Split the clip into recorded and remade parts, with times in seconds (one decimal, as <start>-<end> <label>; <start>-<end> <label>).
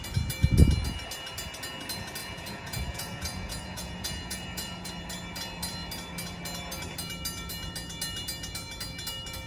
0.0-2.2 recorded; 2.2-4.9 remade; 4.9-9.5 recorded